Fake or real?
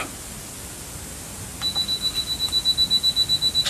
real